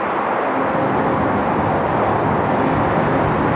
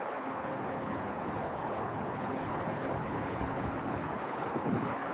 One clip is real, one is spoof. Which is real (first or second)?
first